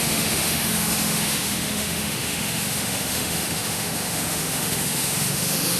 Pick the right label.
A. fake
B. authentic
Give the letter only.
A